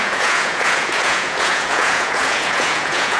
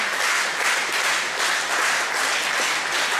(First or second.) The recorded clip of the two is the second